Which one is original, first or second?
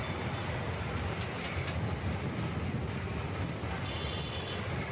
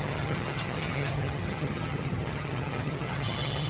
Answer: first